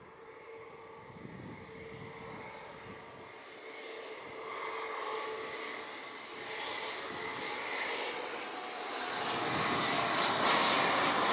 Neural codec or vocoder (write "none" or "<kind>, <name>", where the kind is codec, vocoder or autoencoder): none